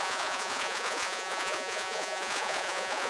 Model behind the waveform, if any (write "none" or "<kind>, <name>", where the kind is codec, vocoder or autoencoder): vocoder, Vocos